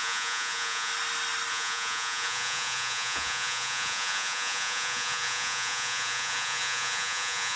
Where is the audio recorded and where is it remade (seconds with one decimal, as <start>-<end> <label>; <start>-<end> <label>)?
0.0-0.9 remade; 0.9-1.5 recorded; 1.5-7.6 remade